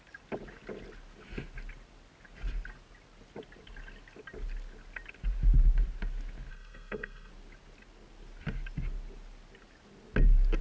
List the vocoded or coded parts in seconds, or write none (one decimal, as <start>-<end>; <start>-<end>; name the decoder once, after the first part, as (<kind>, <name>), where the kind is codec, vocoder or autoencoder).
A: 6.5-7.3 (codec, SNAC)